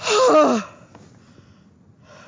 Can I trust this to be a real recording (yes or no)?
yes